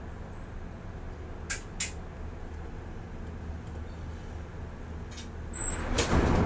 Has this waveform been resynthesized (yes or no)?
no